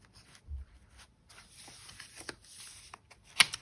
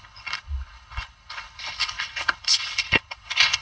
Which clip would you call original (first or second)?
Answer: first